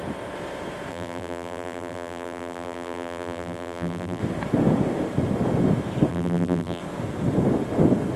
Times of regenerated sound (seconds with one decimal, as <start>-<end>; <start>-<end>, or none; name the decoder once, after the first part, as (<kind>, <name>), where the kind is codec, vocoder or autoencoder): 0.9-4.2 (vocoder, BigVGAN v2); 6.1-6.8

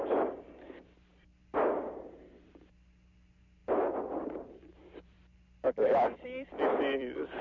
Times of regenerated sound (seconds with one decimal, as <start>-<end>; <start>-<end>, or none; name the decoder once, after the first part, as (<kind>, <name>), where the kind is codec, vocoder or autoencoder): 3.6-7.4 (vocoder, BigVGAN v2)

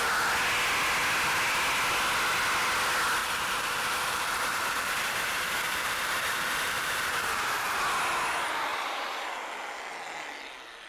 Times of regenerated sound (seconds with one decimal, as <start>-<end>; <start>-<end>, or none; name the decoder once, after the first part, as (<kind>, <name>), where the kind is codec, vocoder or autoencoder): 3.2-7.8 (vocoder, BigVGAN v2); 8.7-9.3

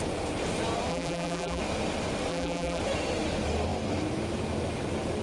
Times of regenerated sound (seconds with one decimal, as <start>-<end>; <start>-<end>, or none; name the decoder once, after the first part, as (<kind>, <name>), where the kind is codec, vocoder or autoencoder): 0.9-1.6 (vocoder, BigVGAN v2); 2.3-2.8

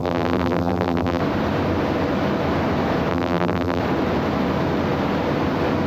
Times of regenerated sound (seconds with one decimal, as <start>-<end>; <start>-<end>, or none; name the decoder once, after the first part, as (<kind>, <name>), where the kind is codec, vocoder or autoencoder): 0.0-1.2 (vocoder, BigVGAN v2); 3.1-3.8

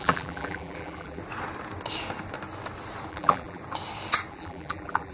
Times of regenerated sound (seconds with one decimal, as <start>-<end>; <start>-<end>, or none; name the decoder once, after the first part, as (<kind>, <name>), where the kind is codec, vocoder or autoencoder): 0.0-1.2 (vocoder, BigVGAN v2); 3.1-3.6; 4.3-5.1

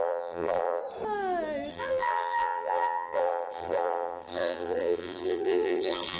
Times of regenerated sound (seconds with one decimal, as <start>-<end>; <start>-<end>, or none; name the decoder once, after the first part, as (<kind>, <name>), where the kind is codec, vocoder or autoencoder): 0.0-0.8 (vocoder, BigVGAN v2); 1.7-6.2

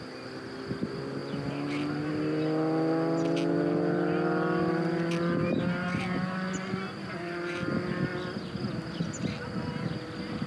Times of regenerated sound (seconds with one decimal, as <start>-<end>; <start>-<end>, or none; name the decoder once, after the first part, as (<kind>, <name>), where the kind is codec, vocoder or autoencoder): none